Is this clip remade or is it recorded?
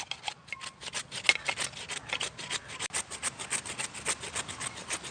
recorded